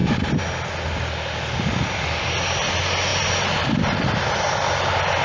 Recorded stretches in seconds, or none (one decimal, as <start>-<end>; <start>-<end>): 0.0-3.1; 4.2-5.2